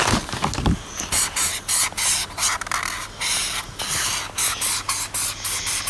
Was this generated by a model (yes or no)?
no